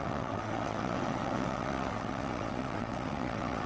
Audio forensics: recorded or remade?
remade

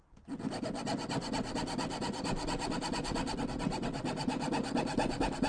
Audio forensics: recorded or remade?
recorded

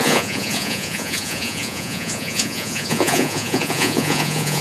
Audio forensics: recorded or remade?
remade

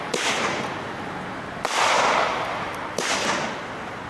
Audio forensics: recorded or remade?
recorded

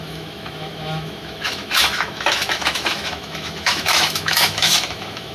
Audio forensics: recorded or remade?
remade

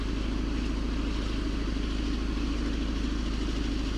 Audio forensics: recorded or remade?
recorded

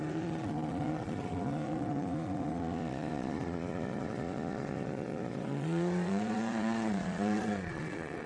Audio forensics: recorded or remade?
remade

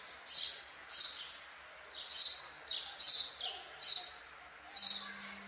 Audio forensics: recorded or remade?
recorded